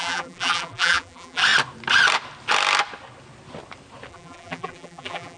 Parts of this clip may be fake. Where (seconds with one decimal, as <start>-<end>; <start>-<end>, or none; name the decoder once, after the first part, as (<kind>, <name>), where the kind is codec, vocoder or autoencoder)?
0.0-1.4 (vocoder, BigVGAN v2); 4.1-5.4